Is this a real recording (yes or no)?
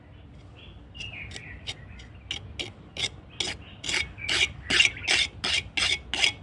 yes